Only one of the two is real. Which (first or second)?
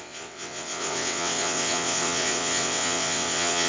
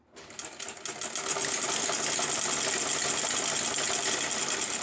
second